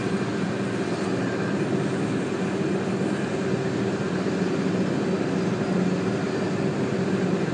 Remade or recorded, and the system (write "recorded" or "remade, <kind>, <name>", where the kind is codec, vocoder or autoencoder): recorded